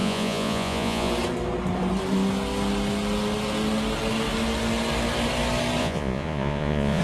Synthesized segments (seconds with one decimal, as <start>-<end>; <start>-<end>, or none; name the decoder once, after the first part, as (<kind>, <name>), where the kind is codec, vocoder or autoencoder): 0.0-1.1 (vocoder, Vocos); 5.8-7.0